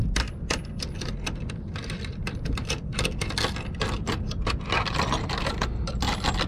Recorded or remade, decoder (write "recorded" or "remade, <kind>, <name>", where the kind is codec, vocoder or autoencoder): recorded